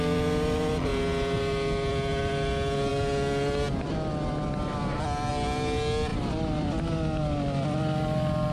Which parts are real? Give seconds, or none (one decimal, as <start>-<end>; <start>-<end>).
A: 0.0-6.1; 6.7-8.5

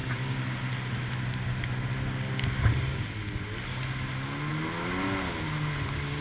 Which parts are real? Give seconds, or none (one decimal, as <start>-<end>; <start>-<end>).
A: 0.0-6.2

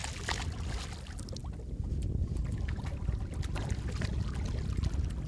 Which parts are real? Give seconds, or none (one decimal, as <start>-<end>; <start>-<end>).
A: 0.0-5.3

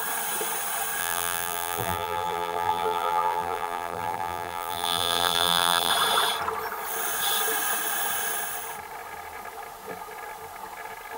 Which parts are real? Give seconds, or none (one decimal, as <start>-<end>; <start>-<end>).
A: 0.0-1.0; 5.9-11.2